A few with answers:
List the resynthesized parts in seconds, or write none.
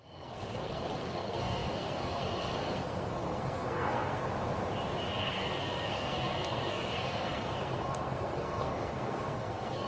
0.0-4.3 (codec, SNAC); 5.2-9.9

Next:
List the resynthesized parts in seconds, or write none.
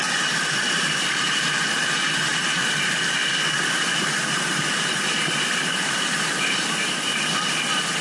0.0-0.9 (vocoder, BigVGAN v2); 2.3-2.8; 4.5-6.9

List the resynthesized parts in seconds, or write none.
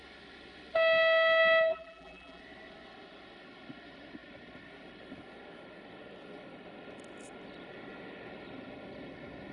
1.7-2.4 (vocoder, BigVGAN v2)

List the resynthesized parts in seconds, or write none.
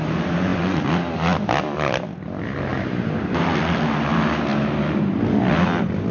none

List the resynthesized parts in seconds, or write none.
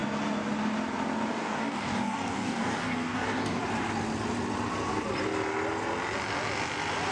1.3-3.6 (codec, DAC)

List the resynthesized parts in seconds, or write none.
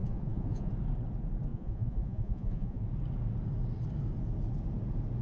0.0-0.7 (vocoder, Vocos); 1.5-2.8